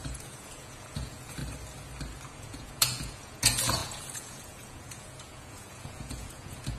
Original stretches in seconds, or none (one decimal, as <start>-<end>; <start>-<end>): 1.4-2.3